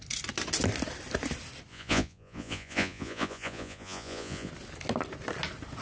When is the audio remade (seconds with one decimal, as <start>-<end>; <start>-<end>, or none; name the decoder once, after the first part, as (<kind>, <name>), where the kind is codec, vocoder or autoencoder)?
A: 1.7-4.5 (vocoder, Vocos)

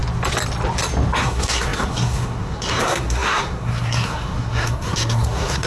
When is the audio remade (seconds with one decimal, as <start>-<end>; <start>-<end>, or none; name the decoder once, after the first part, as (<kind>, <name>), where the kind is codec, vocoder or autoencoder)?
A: 1.2-5.7 (codec, SNAC)

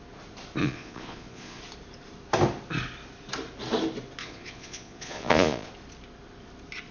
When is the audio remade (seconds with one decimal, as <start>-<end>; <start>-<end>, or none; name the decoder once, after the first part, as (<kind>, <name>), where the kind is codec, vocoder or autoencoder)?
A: 0.6-1.6 (vocoder, Vocos); 4.2-5.7

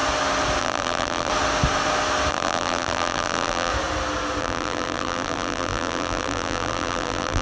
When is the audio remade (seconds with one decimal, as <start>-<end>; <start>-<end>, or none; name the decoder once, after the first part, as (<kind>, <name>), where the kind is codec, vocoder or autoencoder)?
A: 0.6-1.3 (vocoder, BigVGAN v2); 2.3-3.7; 4.4-7.4